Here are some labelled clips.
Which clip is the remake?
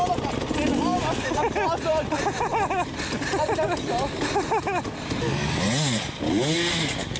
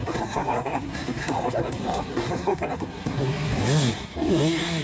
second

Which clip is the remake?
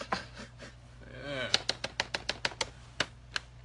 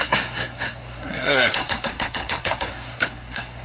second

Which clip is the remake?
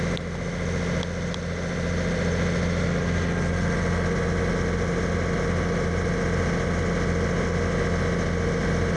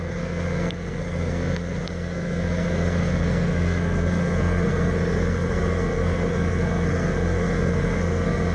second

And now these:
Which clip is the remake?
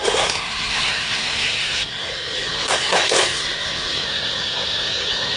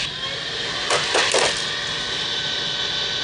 first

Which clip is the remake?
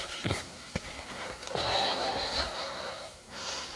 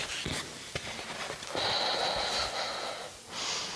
first